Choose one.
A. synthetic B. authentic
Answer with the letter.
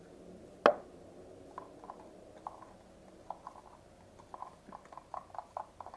B